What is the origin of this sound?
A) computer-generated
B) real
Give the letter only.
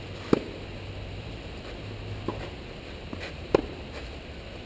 B